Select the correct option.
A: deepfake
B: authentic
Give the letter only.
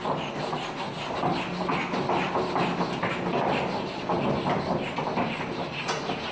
B